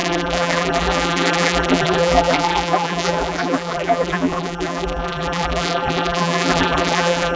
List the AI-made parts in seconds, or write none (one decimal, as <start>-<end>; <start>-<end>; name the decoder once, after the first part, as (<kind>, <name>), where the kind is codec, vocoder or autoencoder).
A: 0.0-7.4 (vocoder, BigVGAN v2)